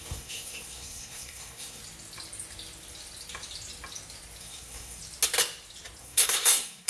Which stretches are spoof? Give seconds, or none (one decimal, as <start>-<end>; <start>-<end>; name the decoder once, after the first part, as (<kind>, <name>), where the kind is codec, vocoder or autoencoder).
0.0-1.8 (codec, SNAC); 4.4-5.0; 6.0-6.9